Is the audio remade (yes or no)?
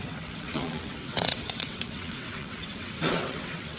yes